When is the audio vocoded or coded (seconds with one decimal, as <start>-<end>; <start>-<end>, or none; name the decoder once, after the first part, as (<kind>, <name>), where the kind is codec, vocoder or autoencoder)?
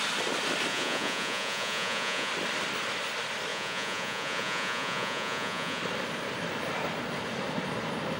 0.7-2.3 (vocoder, Vocos); 3.5-5.8